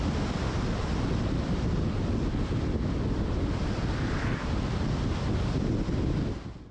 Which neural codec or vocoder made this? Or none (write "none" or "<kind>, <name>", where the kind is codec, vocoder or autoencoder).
none